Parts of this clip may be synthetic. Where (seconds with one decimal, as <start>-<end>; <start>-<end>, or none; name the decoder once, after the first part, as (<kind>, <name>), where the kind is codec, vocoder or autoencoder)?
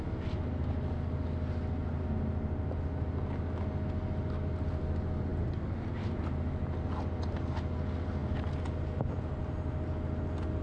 none